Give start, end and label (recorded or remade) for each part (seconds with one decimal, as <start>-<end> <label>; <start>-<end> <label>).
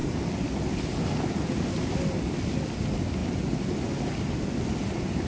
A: 0.0-5.3 recorded